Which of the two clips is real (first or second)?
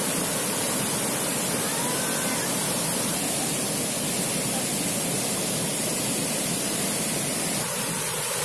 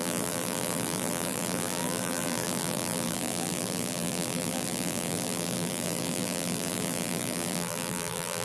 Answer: first